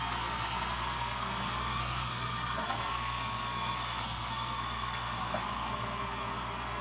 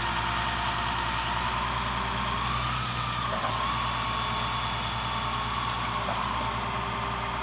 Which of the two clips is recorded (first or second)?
second